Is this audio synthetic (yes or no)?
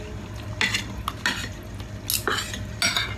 no